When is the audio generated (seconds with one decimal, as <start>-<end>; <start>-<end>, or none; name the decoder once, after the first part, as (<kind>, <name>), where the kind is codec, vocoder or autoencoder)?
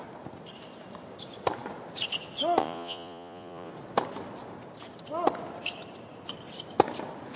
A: 2.6-3.7 (vocoder, Vocos)